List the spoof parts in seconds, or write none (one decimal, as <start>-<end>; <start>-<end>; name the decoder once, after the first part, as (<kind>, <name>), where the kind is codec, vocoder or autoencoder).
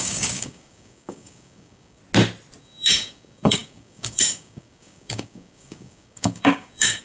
0.0-2.0 (codec, DAC); 2.6-7.0